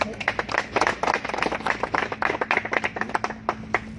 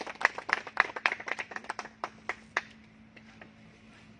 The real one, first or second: first